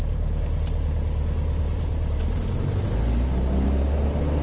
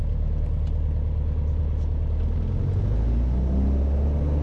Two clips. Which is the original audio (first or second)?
second